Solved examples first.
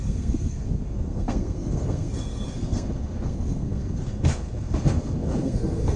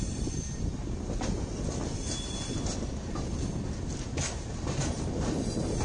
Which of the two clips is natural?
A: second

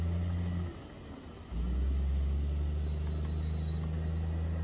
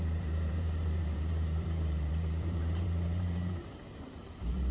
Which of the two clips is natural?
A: first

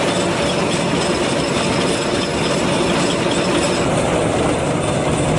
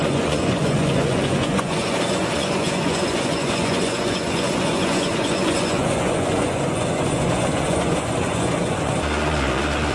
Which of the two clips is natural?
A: first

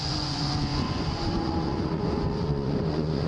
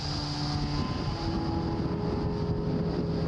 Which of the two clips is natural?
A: second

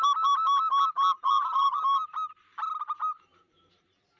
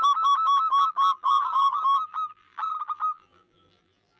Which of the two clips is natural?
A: first